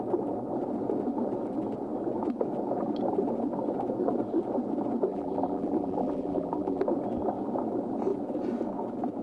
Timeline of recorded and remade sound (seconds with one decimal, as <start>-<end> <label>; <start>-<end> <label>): 0.0-5.1 recorded; 5.1-6.8 remade; 6.8-9.2 recorded